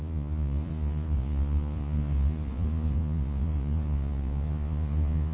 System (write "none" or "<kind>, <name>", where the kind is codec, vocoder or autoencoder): vocoder, Vocos